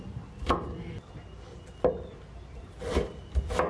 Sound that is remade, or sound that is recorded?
recorded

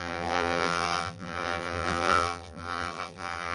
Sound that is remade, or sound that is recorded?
remade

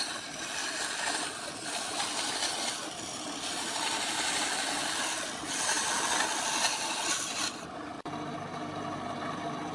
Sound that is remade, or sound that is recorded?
recorded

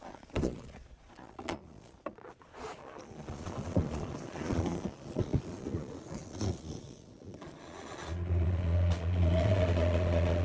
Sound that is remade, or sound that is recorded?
remade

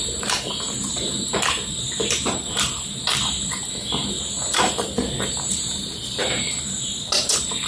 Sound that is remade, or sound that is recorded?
remade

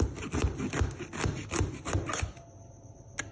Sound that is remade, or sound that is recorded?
recorded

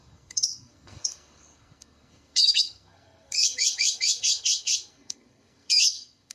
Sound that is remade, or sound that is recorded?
remade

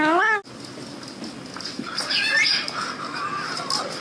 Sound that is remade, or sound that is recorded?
recorded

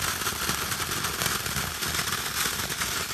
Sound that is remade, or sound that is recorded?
recorded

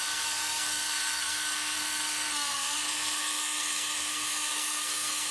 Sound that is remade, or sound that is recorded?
remade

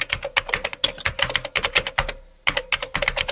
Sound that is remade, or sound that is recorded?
recorded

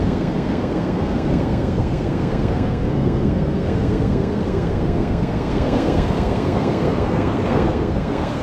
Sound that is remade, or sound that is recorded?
remade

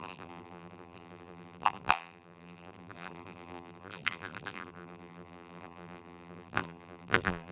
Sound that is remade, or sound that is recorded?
remade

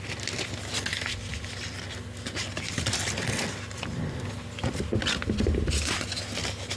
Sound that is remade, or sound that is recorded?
recorded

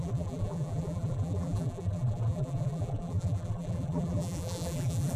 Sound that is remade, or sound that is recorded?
remade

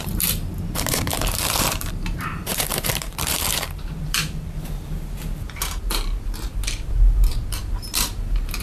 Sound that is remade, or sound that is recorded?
remade